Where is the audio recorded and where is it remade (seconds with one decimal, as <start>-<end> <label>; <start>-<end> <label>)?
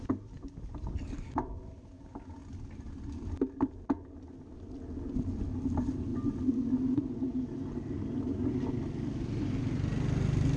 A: 0.0-10.6 recorded